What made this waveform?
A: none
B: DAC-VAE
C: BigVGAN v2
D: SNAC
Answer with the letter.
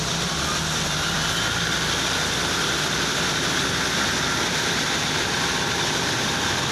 A